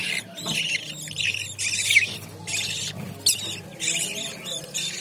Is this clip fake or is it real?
real